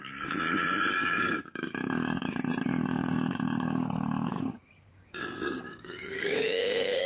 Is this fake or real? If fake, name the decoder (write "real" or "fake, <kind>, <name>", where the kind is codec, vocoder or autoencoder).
fake, codec, DAC